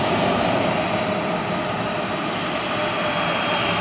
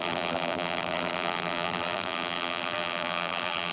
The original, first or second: first